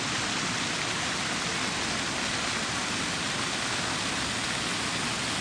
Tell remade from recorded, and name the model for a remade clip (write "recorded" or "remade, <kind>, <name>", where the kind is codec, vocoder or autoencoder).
recorded